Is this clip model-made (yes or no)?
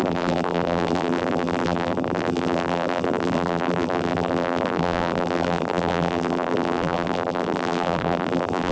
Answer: yes